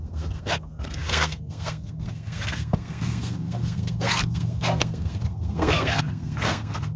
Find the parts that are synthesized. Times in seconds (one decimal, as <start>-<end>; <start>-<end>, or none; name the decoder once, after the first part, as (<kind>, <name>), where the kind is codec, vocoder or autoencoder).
0.0-7.0 (codec, SNAC)